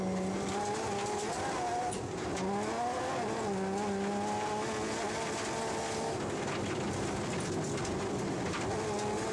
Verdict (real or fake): real